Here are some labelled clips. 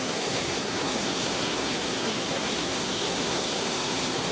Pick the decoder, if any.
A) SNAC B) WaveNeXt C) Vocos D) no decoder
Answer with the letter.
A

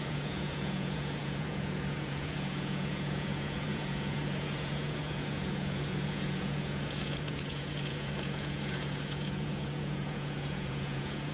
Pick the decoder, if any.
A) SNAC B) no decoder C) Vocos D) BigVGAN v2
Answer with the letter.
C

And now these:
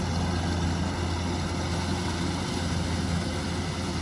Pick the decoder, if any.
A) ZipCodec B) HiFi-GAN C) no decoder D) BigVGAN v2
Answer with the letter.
C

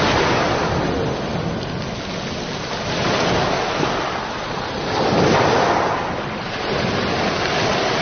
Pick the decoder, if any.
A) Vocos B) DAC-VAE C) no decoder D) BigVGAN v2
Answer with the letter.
C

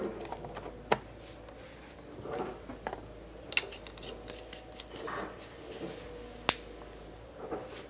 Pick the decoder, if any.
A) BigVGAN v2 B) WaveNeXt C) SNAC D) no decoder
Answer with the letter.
D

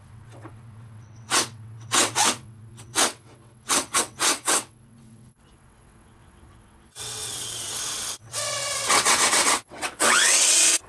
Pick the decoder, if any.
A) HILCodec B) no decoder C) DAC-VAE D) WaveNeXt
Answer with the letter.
D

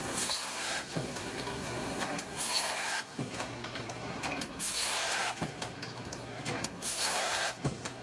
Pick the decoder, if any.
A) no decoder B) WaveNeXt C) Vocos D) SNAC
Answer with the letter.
D